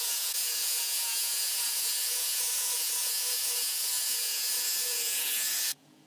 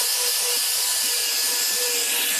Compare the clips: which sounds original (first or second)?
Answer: second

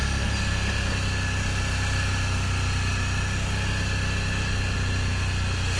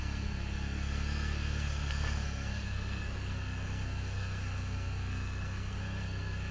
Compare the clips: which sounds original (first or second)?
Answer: first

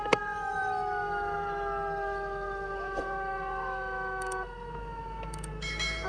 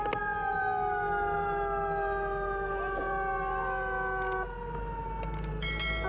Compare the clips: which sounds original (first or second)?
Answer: second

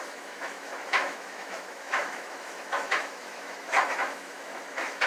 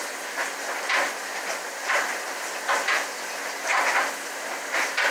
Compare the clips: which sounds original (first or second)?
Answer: second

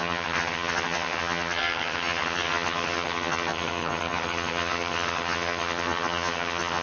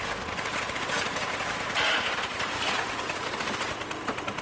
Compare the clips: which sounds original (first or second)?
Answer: second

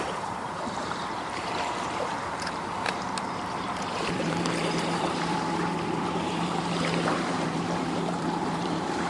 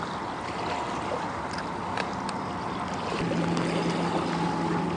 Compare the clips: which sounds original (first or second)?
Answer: second